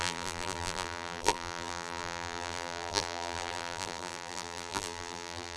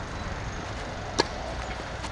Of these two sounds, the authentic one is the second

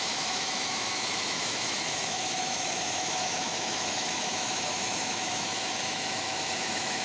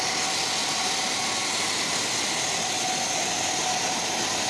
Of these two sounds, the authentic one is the second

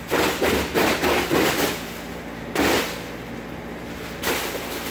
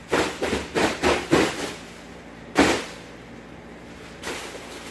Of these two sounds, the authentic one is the first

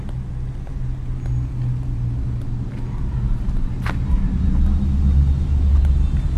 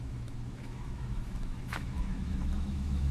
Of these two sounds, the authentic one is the first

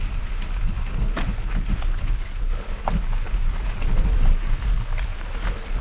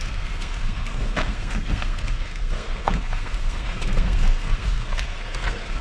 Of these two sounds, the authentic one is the first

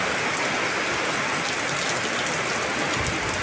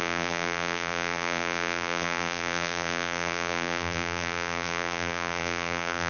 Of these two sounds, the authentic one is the first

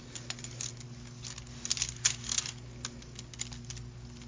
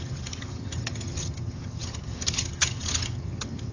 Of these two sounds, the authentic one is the first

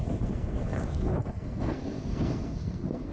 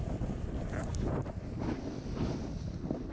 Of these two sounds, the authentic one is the second